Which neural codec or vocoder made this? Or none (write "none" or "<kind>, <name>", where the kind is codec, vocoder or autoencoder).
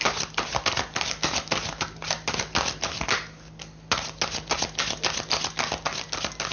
none